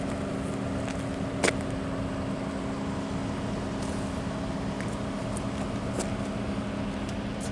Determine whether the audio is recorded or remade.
recorded